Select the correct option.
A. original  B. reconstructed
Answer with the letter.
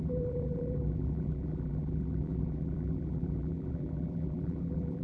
B